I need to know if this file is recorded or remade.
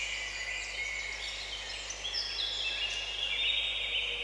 recorded